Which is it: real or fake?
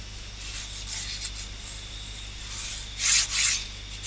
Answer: real